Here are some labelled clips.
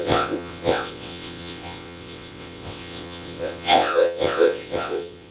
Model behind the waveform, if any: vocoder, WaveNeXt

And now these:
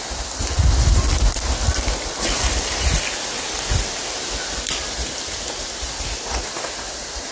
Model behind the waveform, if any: none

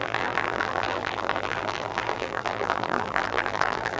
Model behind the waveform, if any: vocoder, BigVGAN v2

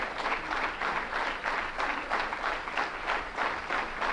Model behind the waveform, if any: none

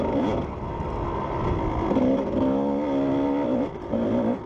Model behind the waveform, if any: none